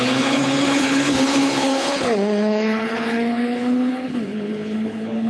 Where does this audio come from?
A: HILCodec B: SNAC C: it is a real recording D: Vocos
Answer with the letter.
A